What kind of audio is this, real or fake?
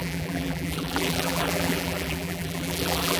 fake